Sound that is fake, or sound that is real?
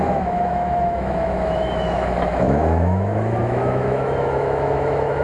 fake